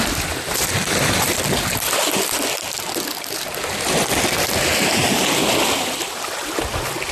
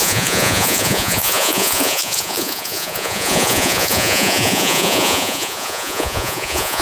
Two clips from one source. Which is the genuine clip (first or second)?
first